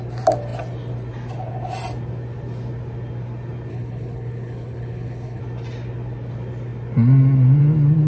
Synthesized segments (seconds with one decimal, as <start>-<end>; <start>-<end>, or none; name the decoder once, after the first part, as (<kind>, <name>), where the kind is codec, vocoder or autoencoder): 3.7-5.4 (codec, HILCodec)